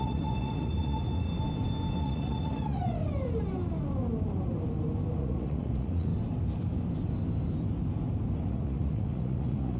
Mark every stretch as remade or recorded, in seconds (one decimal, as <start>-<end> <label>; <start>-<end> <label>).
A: 0.0-1.3 remade; 1.3-2.0 recorded; 2.0-3.0 remade; 3.0-5.2 recorded; 5.2-6.1 remade; 6.1-8.5 recorded; 8.5-9.8 remade